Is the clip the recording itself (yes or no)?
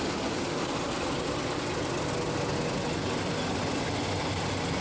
yes